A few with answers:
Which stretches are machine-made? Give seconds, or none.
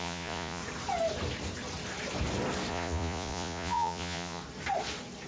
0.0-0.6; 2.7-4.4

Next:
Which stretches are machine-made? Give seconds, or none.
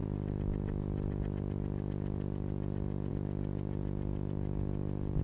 none